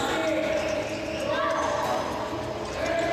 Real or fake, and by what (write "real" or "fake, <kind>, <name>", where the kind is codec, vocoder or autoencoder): real